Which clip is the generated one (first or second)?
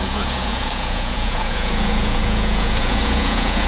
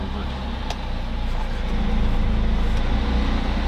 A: first